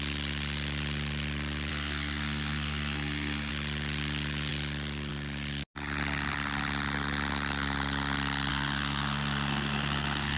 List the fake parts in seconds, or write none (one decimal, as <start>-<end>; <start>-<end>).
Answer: 1.7-3.5; 8.5-10.4